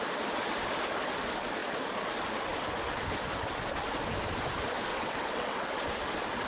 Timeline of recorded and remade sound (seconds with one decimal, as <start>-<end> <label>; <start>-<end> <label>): 0.0-4.9 recorded; 4.9-5.7 remade; 5.7-6.5 recorded